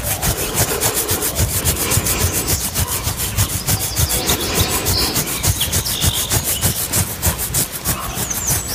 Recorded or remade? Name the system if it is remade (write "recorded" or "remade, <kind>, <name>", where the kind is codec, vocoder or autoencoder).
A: recorded